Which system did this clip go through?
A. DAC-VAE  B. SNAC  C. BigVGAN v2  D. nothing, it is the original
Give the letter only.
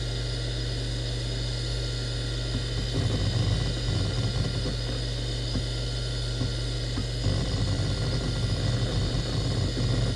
D